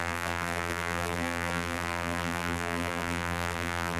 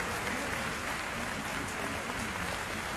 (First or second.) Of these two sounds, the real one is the second